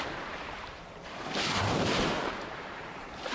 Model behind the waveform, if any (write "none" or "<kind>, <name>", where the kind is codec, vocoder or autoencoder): vocoder, BigVGAN v2